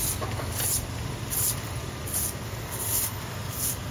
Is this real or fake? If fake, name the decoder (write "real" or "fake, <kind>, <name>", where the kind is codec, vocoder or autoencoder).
real